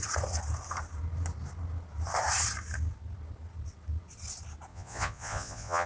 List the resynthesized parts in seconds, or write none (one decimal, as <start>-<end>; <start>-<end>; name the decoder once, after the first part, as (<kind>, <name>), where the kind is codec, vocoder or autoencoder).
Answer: 4.7-5.9 (vocoder, Vocos)